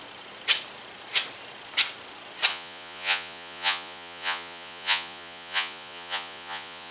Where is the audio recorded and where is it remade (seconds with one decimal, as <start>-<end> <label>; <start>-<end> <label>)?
0.0-2.5 recorded; 2.5-6.9 remade